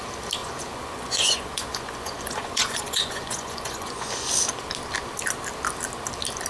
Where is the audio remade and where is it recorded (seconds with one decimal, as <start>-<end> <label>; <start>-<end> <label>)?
0.0-0.4 recorded; 0.4-4.3 remade; 4.3-6.5 recorded